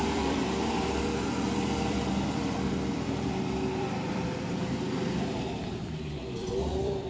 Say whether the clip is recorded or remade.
remade